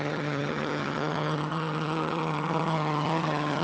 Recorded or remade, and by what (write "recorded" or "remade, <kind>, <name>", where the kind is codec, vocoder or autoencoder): remade, vocoder, HiFi-GAN